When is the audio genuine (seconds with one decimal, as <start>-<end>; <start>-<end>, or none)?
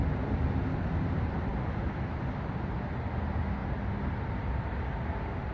0.0-5.5